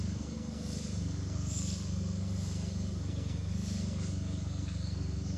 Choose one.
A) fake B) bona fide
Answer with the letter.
A